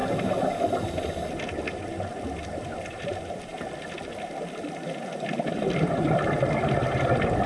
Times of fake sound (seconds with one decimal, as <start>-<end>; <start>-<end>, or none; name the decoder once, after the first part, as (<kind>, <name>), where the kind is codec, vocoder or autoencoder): none